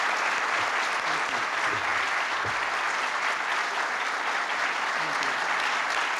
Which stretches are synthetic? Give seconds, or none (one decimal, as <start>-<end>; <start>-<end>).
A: none